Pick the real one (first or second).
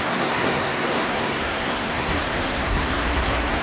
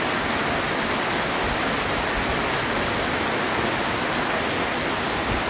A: second